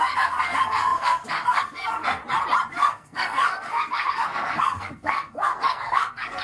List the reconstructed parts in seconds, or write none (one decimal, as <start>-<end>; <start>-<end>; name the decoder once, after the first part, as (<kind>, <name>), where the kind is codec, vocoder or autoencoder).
0.0-2.2 (codec, SNAC); 2.7-6.4